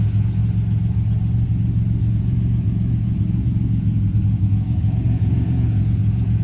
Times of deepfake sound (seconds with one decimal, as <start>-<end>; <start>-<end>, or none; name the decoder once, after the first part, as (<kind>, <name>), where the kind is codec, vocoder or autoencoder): 0.0-0.4 (vocoder, Vocos); 2.1-6.4